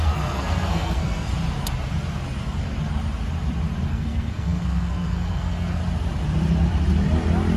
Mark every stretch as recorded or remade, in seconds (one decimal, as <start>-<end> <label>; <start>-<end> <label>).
0.0-1.3 remade; 1.3-3.9 recorded; 3.9-5.8 remade; 5.8-7.6 recorded